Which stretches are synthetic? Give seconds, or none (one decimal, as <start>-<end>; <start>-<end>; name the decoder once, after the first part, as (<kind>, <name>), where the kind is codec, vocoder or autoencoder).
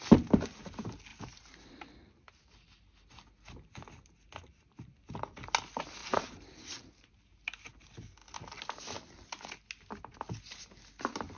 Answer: 1.1-2.3 (vocoder, BigVGAN v2); 6.0-6.9